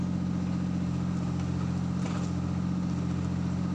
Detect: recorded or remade recorded